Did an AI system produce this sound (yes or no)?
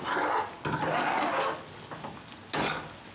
no